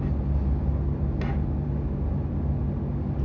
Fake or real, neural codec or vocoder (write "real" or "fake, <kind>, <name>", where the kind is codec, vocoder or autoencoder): real